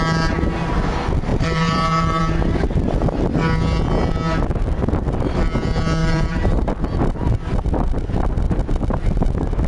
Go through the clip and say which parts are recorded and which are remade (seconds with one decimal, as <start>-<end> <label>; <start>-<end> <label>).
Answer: 0.0-1.3 recorded; 1.3-2.2 remade; 2.2-6.0 recorded; 6.0-6.7 remade; 6.7-9.7 recorded